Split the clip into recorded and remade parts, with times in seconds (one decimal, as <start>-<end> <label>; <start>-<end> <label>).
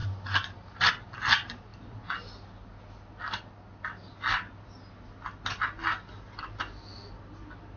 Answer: 0.0-0.9 remade; 0.9-1.7 recorded; 1.7-3.2 remade; 3.2-6.9 recorded; 6.9-7.8 remade